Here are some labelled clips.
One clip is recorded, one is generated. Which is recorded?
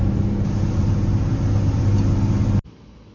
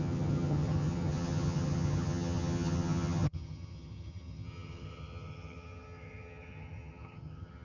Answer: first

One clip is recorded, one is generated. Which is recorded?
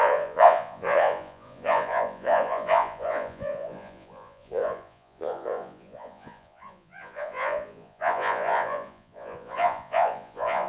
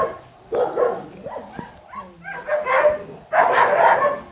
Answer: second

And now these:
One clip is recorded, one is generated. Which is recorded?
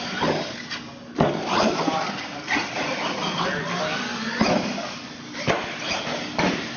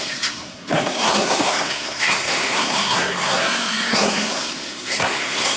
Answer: first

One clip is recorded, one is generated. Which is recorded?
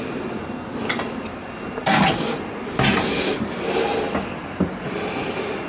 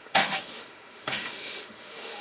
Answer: first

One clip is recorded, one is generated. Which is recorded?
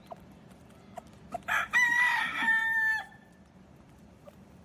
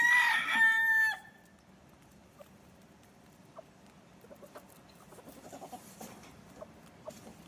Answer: second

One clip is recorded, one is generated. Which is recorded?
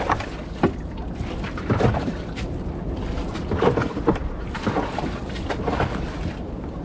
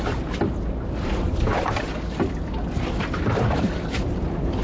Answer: second